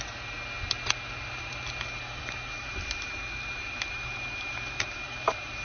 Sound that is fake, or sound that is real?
fake